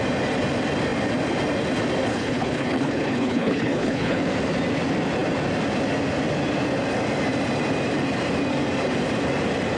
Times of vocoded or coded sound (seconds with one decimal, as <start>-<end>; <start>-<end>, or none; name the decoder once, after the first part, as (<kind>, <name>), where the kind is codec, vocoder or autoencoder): 2.1-4.2 (codec, HILCodec)